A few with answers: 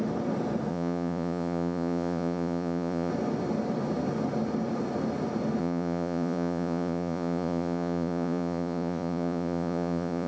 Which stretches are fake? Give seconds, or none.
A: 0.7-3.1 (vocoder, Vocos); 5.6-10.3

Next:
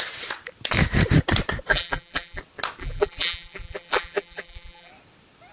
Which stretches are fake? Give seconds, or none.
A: 1.7-2.4 (vocoder, BigVGAN v2); 2.8-4.9